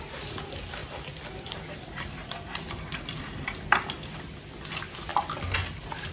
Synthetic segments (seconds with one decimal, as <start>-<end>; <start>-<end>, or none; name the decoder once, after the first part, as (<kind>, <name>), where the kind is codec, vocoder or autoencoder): none